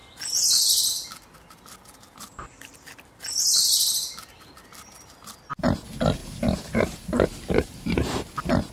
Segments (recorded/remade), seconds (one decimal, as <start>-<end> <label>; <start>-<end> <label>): 0.0-6.2 recorded; 6.2-8.2 remade; 8.2-8.7 recorded